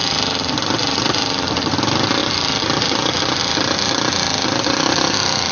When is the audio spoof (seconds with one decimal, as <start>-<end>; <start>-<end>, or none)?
0.0-1.7; 2.2-3.4